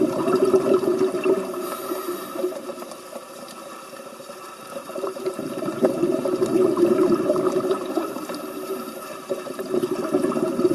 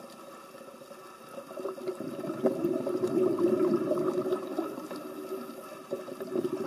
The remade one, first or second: first